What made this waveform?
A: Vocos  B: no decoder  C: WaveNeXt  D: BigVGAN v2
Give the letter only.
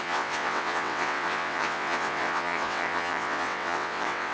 C